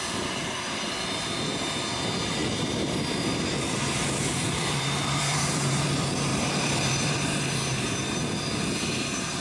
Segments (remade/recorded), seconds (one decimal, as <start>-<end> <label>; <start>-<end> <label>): 0.0-9.4 remade